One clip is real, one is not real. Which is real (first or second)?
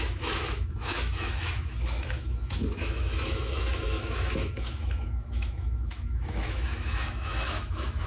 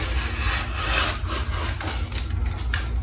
second